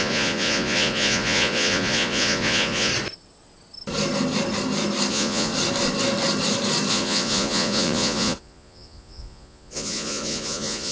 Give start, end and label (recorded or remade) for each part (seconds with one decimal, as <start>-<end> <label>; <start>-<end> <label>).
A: 0.0-2.9 remade; 2.9-5.1 recorded; 5.1-5.5 remade; 5.5-6.9 recorded; 6.9-10.9 remade

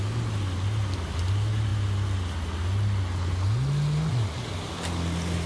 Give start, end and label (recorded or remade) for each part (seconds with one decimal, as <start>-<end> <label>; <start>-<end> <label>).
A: 0.0-5.5 recorded